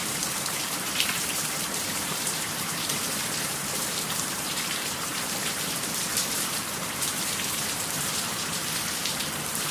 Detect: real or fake fake